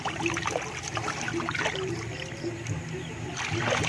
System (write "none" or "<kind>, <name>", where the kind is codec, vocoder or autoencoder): none